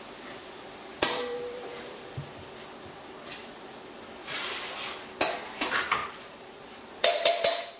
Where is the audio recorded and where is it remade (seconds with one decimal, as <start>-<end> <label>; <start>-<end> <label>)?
0.0-0.9 recorded; 0.9-2.2 remade; 2.2-4.2 recorded; 4.2-4.7 remade; 4.7-6.0 recorded; 6.0-6.9 remade; 6.9-7.8 recorded